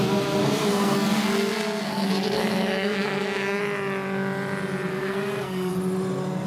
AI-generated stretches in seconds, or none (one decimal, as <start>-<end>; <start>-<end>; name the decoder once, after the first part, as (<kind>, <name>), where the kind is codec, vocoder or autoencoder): 0.4-3.6 (codec, SNAC); 4.9-5.7